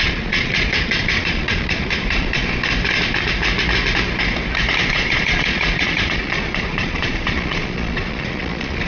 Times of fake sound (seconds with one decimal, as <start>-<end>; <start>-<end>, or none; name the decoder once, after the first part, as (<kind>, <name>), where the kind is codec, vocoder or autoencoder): 0.0-2.4 (vocoder, Vocos); 4.9-8.9